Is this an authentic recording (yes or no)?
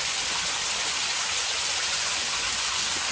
no